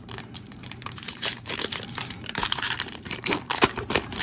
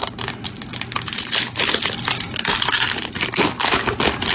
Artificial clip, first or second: first